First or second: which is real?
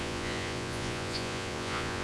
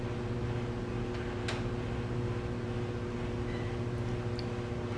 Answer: second